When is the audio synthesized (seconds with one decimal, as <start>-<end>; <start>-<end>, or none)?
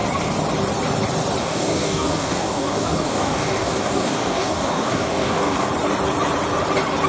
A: 1.4-5.7